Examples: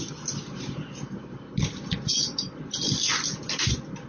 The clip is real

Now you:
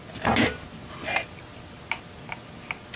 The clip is real